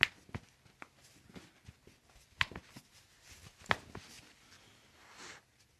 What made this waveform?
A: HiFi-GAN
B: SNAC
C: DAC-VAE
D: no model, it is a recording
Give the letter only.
D